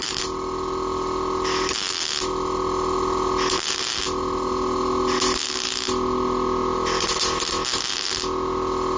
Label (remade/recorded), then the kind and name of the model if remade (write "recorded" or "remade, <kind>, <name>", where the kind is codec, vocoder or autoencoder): recorded